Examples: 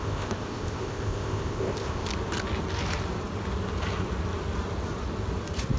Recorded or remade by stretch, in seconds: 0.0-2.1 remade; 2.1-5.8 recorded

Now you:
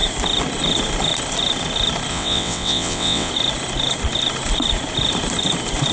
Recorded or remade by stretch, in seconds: 0.0-2.1 recorded; 2.1-3.3 remade; 3.3-5.9 recorded

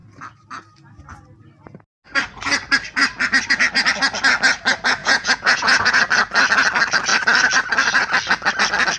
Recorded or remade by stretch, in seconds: 0.0-5.0 recorded; 5.0-6.0 remade; 6.0-9.0 recorded

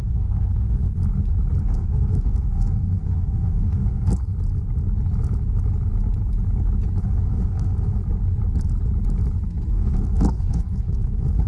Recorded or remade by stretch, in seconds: 0.0-0.8 remade; 0.8-1.6 recorded; 1.6-4.3 remade; 4.3-7.0 recorded; 7.0-8.0 remade; 8.0-9.7 recorded; 9.7-11.5 remade

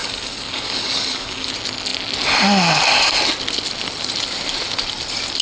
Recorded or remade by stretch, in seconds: 0.0-1.5 remade; 1.5-5.4 recorded

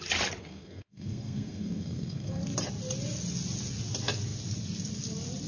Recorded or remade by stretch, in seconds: 0.0-0.4 recorded; 0.4-2.4 remade; 2.4-5.5 recorded